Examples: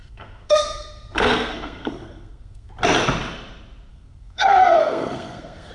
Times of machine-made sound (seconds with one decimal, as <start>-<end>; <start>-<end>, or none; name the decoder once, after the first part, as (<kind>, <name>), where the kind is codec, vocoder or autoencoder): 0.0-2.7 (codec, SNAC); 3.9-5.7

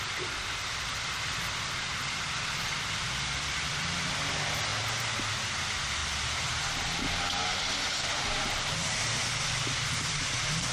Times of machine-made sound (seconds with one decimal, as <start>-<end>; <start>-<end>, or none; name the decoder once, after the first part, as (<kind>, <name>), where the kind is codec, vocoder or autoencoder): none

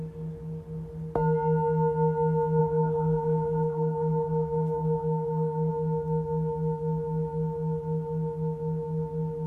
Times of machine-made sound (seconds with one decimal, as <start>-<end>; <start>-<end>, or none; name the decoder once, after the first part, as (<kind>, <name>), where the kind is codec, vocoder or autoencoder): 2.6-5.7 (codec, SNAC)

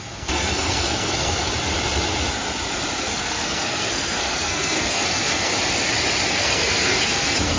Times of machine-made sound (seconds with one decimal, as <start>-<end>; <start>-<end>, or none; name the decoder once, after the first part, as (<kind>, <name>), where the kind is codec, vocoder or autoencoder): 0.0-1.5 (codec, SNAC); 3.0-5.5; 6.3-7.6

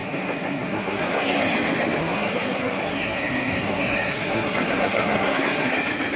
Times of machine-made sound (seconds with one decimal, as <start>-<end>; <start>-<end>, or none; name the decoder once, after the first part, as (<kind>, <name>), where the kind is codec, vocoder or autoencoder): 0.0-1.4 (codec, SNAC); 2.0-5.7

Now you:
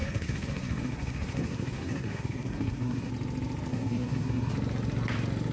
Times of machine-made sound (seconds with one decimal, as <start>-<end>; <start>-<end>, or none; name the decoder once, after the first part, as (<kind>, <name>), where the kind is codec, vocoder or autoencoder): 0.0-3.1 (codec, SNAC); 3.7-4.5

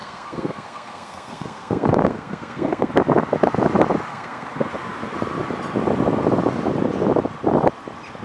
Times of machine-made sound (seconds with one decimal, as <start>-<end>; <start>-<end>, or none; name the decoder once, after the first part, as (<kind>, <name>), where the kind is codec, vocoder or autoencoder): 0.0-2.9 (codec, SNAC); 4.1-4.7